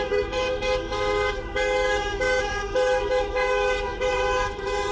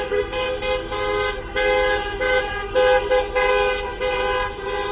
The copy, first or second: first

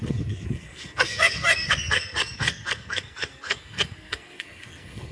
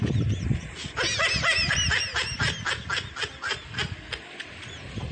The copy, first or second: first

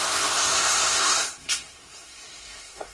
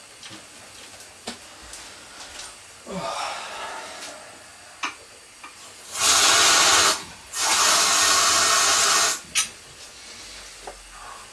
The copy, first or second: first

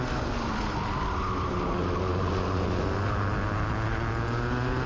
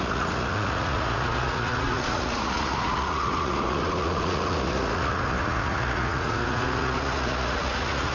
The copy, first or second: second